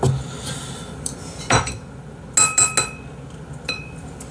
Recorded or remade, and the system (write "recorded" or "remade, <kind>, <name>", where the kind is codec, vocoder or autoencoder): recorded